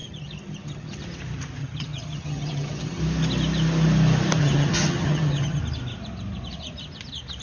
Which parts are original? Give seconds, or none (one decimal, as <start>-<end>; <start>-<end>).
1.0-1.6; 3.0-4.4; 5.6-7.4